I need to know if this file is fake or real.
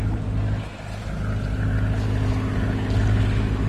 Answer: real